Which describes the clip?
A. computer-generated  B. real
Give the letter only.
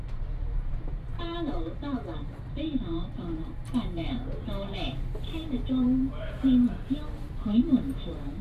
A